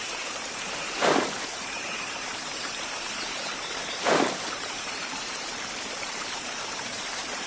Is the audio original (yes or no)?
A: no